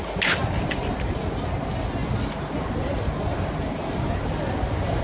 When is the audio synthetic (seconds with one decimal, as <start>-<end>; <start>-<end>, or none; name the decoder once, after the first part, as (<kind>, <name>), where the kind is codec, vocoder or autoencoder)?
none